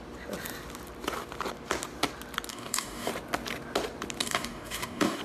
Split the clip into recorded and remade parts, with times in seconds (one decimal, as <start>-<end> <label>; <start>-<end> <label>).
0.0-2.5 recorded; 2.5-3.1 remade; 3.1-4.2 recorded; 4.2-5.2 remade